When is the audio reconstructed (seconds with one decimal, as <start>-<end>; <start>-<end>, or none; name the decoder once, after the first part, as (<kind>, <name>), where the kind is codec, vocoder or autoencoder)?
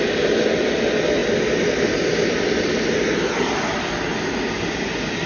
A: none